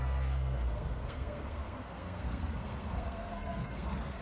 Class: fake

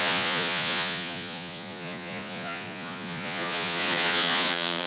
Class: fake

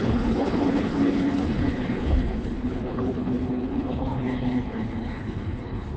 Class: fake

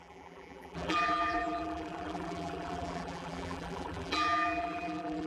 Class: fake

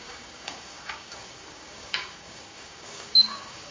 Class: fake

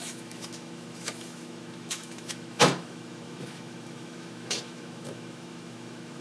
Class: fake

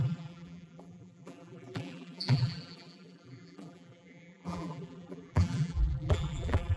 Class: fake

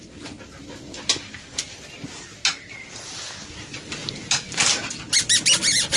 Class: real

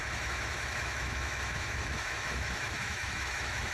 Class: fake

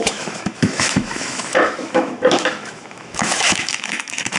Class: fake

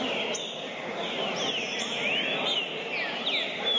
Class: real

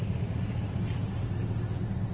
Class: fake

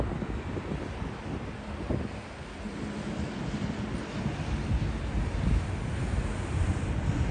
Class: real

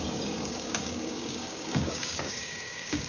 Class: fake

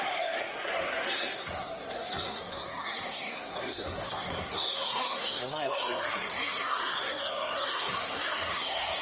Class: fake